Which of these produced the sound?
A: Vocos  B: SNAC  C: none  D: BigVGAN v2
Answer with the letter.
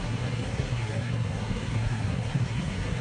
B